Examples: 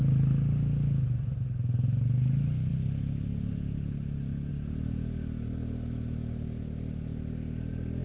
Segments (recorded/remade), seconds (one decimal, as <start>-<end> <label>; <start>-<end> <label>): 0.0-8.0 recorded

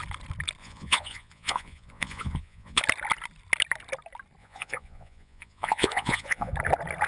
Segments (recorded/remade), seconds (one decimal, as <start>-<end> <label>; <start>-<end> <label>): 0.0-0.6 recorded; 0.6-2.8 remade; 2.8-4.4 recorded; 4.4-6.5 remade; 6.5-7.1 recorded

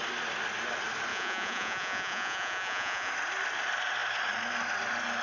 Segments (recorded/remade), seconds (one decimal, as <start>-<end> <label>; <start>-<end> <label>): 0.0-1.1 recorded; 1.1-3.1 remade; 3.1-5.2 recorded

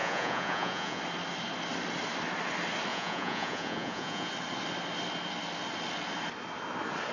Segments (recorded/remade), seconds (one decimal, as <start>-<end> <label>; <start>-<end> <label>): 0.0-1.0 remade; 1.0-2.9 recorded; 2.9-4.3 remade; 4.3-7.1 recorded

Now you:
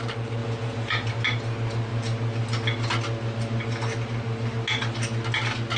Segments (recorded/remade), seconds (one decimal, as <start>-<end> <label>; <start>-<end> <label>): 0.0-0.4 recorded; 0.4-1.1 remade; 1.1-5.8 recorded

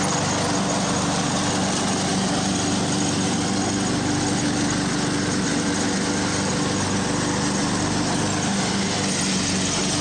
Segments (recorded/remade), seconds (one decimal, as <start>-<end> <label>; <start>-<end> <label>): 0.0-10.0 recorded

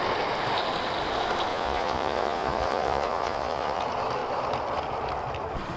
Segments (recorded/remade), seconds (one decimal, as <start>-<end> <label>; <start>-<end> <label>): 0.0-1.5 recorded; 1.5-3.8 remade; 3.8-5.8 recorded

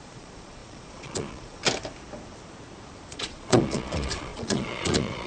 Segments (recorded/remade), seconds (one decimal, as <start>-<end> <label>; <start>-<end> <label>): 0.0-1.6 remade; 1.6-3.1 recorded; 3.1-5.3 remade